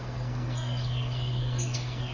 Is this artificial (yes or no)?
yes